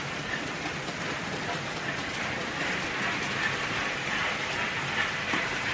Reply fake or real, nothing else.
real